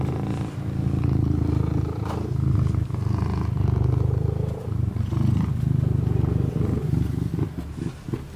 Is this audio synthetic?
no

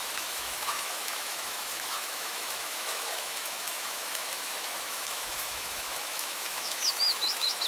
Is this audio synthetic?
yes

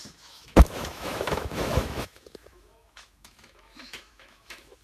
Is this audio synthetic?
yes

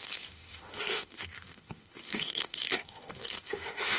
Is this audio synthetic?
yes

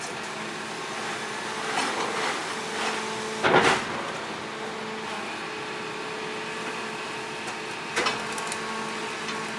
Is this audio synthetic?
no